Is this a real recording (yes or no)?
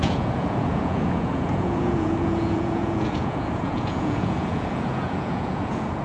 no